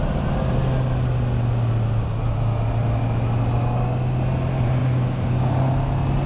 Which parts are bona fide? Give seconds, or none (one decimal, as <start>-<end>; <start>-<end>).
0.0-4.8; 5.5-6.3